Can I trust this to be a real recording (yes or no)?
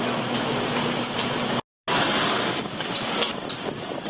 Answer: yes